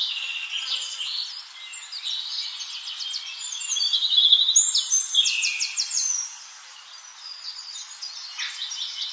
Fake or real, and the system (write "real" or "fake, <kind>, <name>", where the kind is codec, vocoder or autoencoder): real